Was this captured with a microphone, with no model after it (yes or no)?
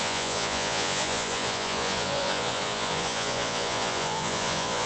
no